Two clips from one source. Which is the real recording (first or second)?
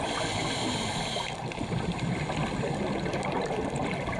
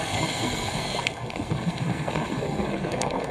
first